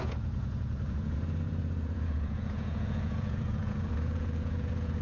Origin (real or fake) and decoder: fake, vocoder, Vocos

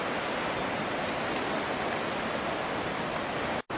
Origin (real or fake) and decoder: real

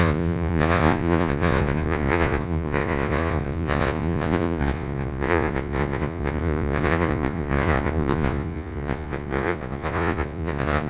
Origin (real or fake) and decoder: fake, vocoder, Vocos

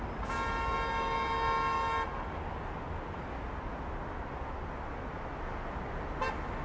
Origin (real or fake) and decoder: real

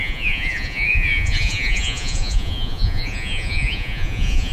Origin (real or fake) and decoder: fake, vocoder, Vocos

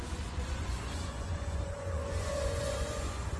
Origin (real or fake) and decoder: fake, vocoder, Vocos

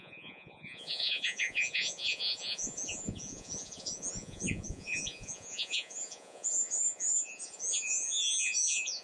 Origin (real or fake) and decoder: fake, vocoder, Vocos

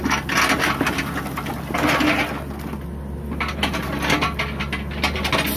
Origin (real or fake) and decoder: real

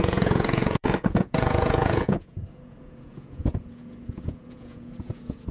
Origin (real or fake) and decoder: fake, vocoder, Vocos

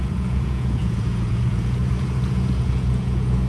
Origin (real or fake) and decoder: fake, vocoder, Vocos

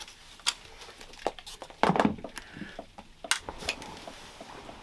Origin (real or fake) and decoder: real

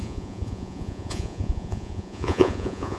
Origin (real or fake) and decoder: fake, vocoder, Vocos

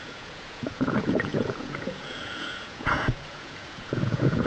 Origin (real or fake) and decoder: fake, vocoder, Vocos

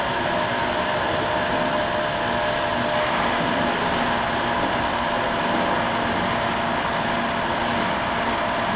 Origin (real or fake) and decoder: real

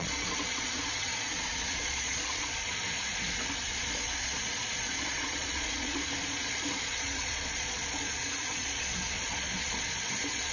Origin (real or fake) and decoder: fake, vocoder, Vocos